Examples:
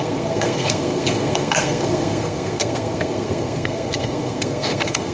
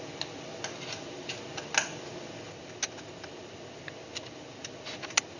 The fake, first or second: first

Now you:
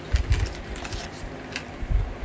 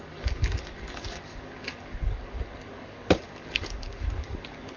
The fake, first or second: second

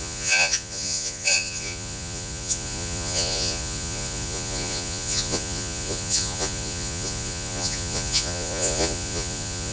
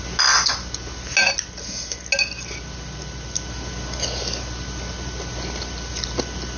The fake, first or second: first